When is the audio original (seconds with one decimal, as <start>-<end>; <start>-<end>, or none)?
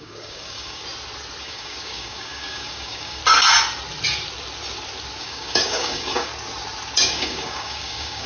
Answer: 0.8-1.4; 3.2-5.2; 6.3-7.0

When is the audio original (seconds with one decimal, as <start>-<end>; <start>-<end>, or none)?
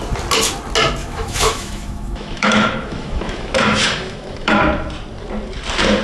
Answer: 0.0-1.0; 4.6-6.0